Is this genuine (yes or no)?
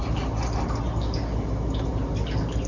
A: yes